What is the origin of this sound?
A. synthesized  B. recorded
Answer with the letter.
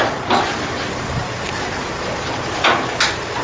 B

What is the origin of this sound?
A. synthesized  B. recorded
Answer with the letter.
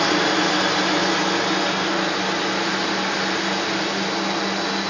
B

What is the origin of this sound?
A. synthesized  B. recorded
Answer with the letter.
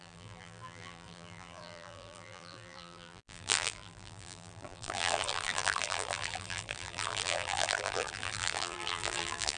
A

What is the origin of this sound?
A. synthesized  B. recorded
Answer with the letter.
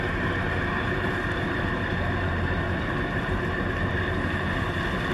A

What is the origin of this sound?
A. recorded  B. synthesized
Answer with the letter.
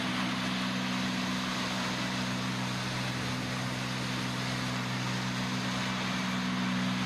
A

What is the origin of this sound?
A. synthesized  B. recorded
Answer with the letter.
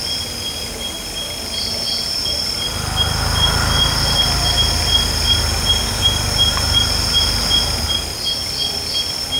B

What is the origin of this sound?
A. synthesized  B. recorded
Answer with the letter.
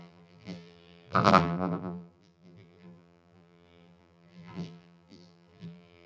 A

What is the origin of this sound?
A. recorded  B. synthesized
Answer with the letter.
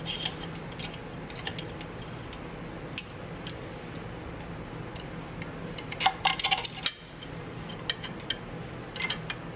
A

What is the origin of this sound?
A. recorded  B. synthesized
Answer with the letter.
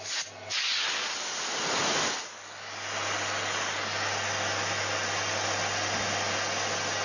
A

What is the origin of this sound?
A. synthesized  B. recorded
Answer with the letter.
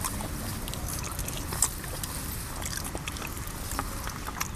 B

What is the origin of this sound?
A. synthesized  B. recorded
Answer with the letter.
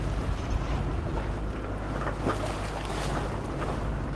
B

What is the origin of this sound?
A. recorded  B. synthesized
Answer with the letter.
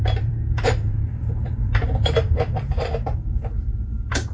B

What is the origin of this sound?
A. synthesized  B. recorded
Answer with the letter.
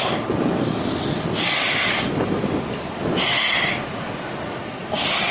B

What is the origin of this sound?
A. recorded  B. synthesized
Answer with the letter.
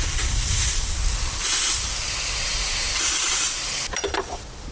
B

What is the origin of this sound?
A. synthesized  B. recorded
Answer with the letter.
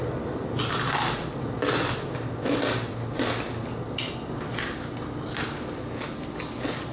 B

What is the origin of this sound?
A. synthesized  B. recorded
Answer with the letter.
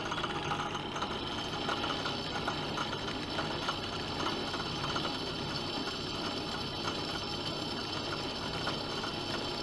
B